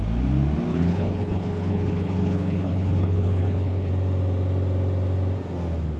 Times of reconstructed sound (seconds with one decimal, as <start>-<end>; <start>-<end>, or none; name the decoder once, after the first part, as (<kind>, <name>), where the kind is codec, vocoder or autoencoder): 0.7-3.9 (codec, HILCodec)